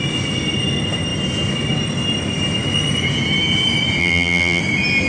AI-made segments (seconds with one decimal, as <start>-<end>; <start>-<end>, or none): 4.0-4.6